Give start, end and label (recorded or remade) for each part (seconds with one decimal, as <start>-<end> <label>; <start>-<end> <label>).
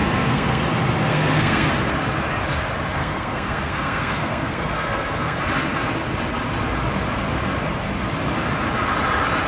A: 0.0-0.6 remade; 0.6-1.0 recorded; 1.0-1.7 remade; 1.7-3.0 recorded; 3.0-5.4 remade; 5.4-9.5 recorded